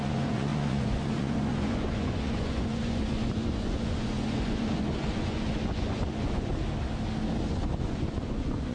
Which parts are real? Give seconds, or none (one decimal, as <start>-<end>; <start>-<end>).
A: 6.5-7.4